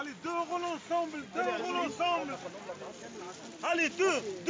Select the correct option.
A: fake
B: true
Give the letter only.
B